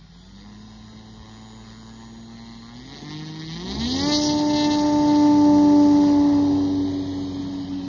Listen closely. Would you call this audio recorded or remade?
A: recorded